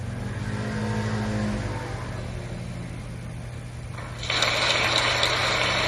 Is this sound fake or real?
real